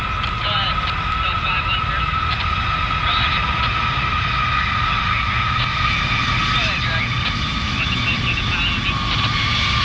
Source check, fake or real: real